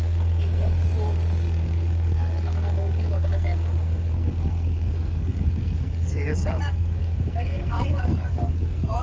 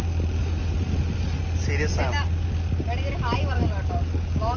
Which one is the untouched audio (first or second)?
second